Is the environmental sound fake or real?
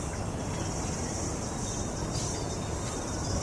real